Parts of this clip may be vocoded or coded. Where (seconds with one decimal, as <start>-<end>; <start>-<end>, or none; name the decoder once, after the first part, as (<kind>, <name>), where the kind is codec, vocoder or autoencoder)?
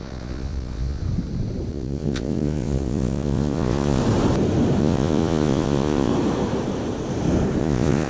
0.0-1.0 (vocoder, Vocos); 1.7-4.0; 4.8-6.1; 7.6-8.1